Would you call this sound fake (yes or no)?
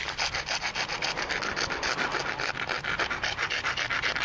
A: no